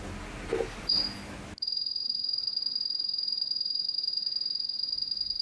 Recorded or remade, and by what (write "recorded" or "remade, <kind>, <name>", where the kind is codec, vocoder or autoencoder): recorded